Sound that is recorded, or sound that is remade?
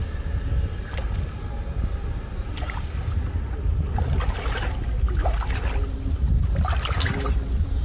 recorded